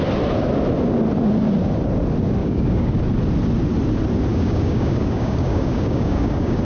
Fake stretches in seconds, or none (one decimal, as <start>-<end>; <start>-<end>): 2.4-2.9; 4.3-6.6